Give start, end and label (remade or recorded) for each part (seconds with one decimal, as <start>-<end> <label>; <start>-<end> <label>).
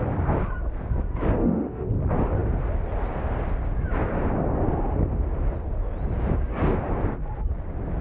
0.0-1.4 recorded; 1.4-1.9 remade; 1.9-8.0 recorded